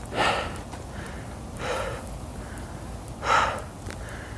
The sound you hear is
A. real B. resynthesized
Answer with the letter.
A